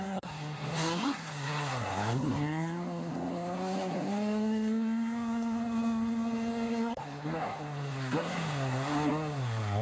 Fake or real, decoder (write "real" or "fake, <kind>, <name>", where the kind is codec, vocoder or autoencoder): fake, codec, SNAC